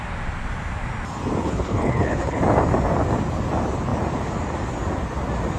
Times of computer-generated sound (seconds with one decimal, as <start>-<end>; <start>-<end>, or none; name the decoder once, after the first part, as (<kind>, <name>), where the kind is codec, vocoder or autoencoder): 1.4-2.4 (codec, HILCodec)